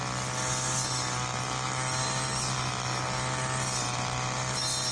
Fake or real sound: real